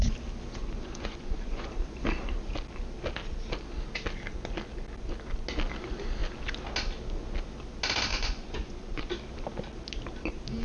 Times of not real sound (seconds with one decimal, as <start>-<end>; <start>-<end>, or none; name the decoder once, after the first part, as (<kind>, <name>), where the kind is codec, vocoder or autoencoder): 0.6-1.7 (vocoder, Vocos); 8.1-9.1